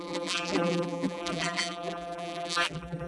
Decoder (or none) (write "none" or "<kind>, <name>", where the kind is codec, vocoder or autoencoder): vocoder, BigVGAN v2